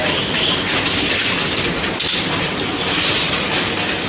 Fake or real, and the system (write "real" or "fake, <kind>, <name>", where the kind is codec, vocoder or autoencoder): real